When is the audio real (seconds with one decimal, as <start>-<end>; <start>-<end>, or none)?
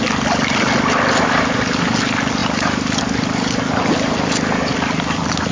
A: 0.0-2.4; 3.0-5.5